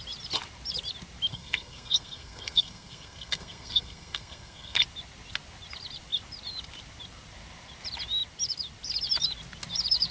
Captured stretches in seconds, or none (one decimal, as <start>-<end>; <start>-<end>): 0.0-1.3; 4.8-10.1